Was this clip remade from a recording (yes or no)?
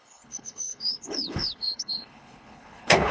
yes